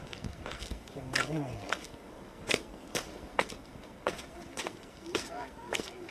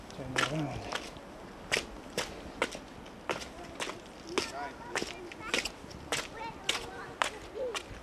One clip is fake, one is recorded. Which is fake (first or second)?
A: first